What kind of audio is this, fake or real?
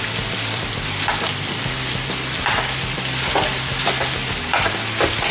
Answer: real